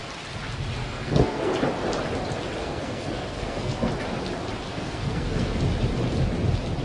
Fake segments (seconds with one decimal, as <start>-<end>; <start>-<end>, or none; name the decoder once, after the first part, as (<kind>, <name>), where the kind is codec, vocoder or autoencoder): 0.8-1.5 (codec, SNAC); 2.6-3.9; 4.7-5.6